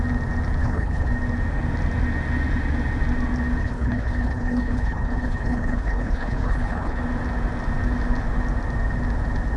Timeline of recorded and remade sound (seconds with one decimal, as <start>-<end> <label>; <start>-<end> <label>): 0.0-0.6 recorded; 0.6-1.1 remade; 1.1-3.6 recorded; 3.6-7.0 remade; 7.0-9.6 recorded